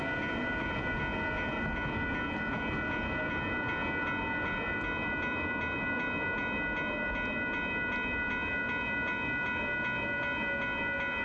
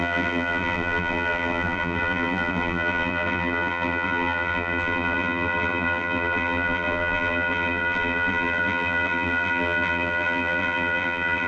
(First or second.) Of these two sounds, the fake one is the second